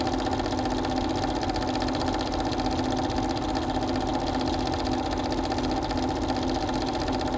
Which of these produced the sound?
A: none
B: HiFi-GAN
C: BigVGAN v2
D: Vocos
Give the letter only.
A